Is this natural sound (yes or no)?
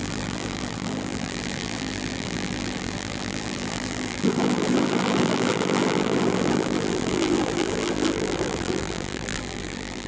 no